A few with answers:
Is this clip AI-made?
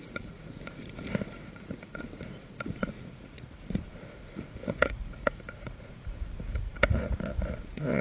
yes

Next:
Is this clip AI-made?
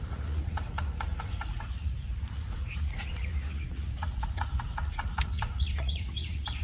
yes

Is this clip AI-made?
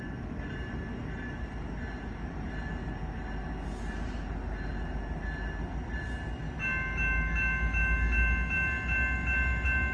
no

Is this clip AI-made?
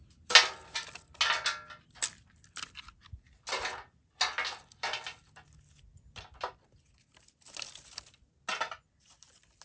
no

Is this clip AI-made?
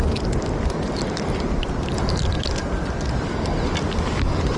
no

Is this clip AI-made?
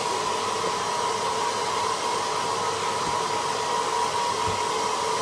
no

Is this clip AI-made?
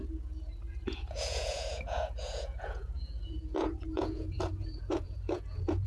yes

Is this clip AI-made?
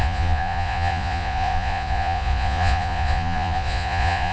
yes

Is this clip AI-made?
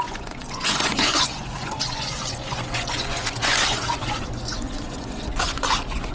yes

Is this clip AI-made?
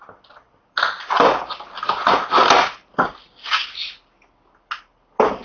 no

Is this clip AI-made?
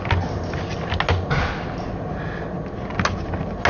no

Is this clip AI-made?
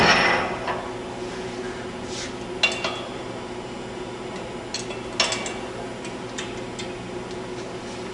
no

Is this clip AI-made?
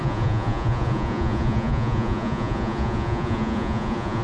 yes